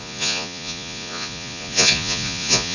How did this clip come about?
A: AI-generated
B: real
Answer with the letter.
A